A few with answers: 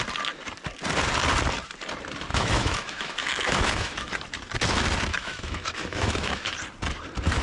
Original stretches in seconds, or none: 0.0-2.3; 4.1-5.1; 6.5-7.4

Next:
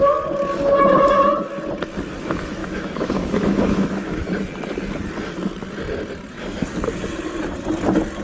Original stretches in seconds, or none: 0.0-2.6; 4.3-8.2

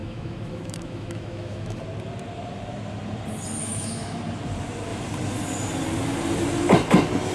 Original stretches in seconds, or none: 1.8-3.6; 4.2-7.3

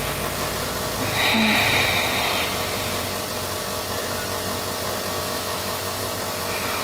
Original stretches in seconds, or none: 0.0-5.2; 6.0-6.8